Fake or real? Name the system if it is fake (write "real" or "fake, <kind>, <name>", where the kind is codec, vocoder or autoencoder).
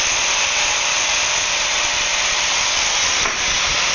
fake, vocoder, BigVGAN v2